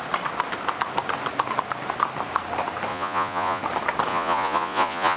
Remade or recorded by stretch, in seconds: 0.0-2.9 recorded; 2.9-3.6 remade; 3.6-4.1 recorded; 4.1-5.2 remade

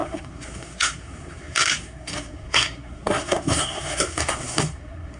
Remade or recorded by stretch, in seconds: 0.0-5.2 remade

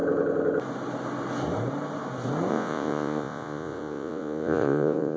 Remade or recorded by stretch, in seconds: 0.0-2.5 recorded; 2.5-5.2 remade

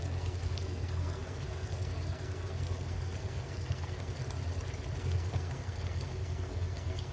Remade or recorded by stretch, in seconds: 0.0-4.2 remade; 4.2-5.0 recorded; 5.0-7.1 remade

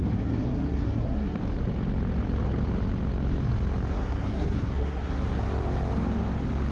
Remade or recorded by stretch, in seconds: 0.0-1.4 remade; 1.4-3.9 recorded; 3.9-5.4 remade; 5.4-6.7 recorded

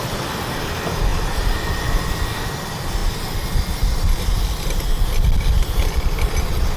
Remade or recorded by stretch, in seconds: 0.0-6.8 recorded